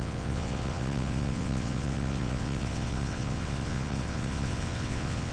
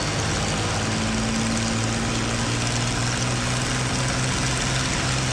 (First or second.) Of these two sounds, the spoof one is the first